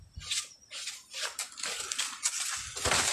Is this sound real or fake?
real